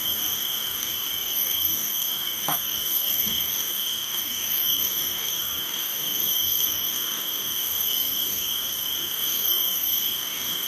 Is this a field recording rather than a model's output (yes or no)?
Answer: no